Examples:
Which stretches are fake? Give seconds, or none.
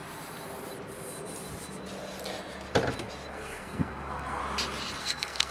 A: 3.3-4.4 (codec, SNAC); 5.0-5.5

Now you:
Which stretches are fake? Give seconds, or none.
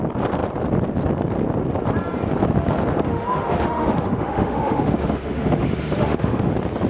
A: 2.9-6.5 (autoencoder, DAC-VAE)